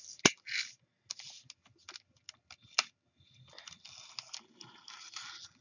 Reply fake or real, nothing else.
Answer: real